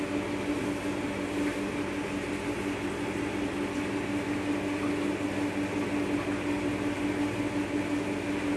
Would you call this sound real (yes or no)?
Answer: yes